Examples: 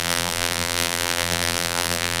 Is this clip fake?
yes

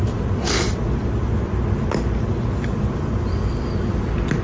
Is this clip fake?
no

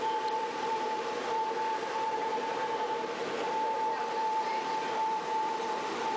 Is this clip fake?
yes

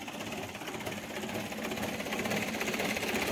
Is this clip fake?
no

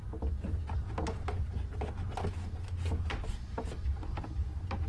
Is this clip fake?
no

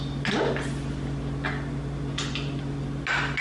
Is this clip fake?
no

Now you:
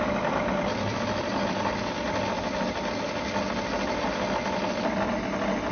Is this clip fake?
no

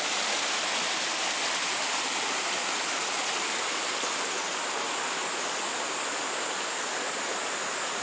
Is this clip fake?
no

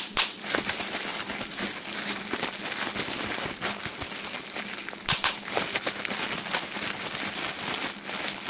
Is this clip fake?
no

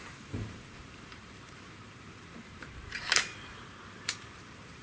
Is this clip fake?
yes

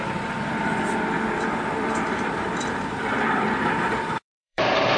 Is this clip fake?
yes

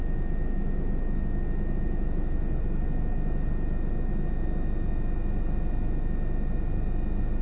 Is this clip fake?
no